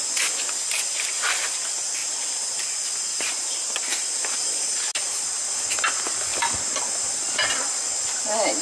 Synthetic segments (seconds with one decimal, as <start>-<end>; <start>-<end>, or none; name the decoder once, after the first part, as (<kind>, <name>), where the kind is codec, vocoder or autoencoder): 3.1-4.1 (vocoder, BigVGAN v2); 6.3-7.8